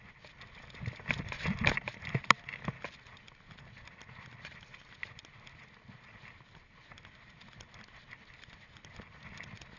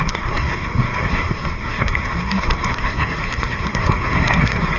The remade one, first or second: second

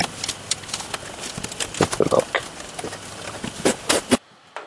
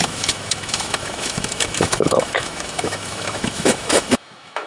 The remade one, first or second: second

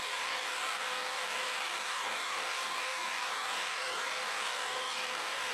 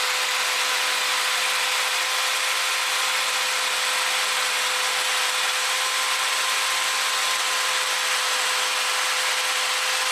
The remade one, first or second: first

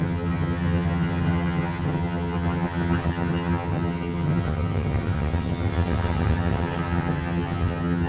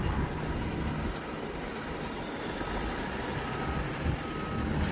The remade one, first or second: first